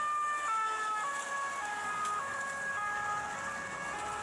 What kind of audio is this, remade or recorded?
recorded